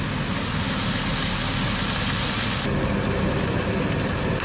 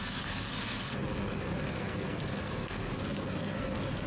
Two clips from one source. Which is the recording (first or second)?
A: first